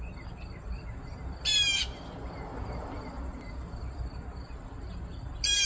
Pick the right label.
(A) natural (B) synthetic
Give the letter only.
A